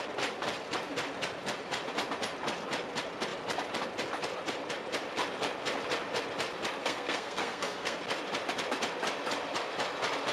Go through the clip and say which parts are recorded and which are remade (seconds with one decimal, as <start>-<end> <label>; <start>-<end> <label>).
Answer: 0.0-6.8 recorded; 6.8-8.0 remade; 8.0-10.3 recorded